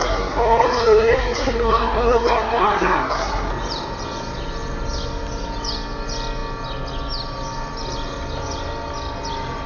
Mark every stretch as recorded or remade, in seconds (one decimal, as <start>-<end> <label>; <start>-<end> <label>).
0.0-3.5 remade; 3.5-9.7 recorded